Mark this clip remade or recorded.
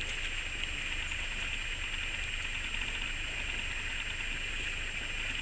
recorded